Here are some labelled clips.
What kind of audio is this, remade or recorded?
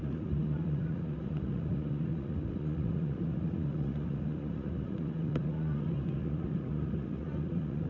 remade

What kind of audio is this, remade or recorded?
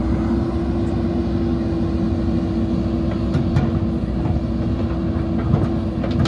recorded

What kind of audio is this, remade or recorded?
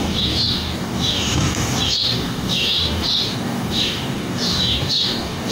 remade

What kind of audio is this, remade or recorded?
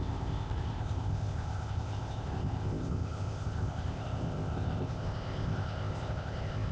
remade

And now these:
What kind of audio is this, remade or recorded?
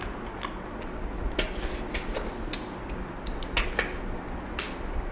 recorded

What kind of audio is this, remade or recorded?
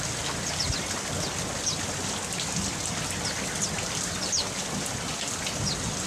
recorded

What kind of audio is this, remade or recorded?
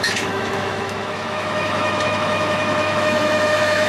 remade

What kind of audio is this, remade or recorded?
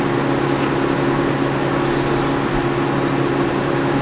recorded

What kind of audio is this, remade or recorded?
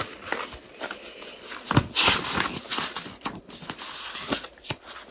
recorded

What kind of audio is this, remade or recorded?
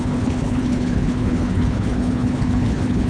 remade